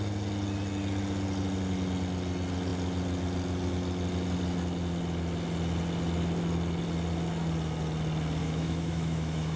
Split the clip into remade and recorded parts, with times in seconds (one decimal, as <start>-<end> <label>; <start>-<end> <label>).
0.0-8.4 recorded; 8.4-9.6 remade